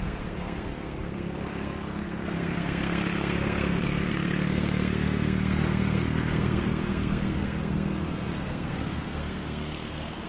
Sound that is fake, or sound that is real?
fake